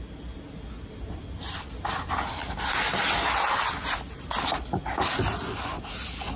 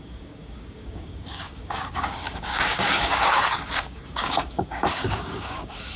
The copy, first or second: second